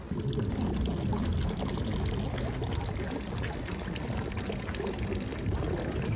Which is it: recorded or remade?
recorded